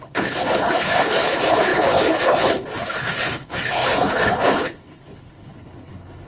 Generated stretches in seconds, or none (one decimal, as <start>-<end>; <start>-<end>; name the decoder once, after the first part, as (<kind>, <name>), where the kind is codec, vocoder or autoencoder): 0.0-6.3 (codec, HILCodec)